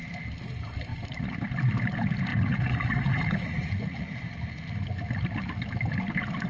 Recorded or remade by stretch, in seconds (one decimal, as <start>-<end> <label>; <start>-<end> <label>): 0.0-2.3 recorded; 2.3-4.2 remade; 4.2-6.5 recorded